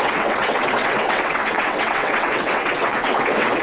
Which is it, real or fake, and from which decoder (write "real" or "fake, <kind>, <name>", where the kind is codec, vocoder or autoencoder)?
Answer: fake, vocoder, WaveNeXt